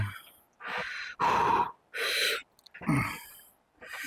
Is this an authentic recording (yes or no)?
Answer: yes